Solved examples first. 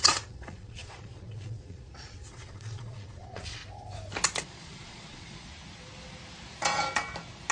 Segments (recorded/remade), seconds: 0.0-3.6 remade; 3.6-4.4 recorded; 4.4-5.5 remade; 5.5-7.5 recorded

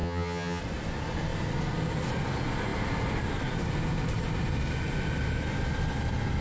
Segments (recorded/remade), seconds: 0.0-0.6 remade; 0.6-6.4 recorded

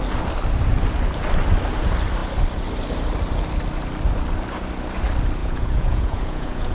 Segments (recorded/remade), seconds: 0.0-5.4 recorded; 5.4-6.7 remade

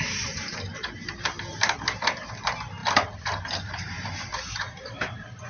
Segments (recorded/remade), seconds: 0.0-5.5 remade

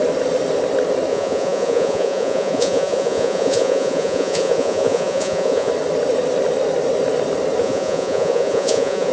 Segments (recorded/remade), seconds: 0.0-1.1 recorded; 1.1-5.7 remade; 5.7-7.6 recorded; 7.6-9.1 remade